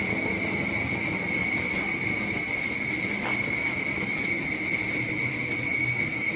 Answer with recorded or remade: recorded